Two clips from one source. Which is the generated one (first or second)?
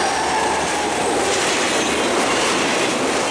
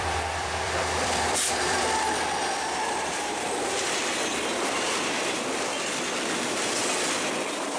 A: second